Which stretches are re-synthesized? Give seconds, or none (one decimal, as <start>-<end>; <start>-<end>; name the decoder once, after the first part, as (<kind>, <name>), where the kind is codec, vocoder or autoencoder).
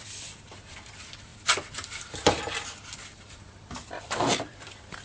0.0-5.0 (vocoder, BigVGAN v2)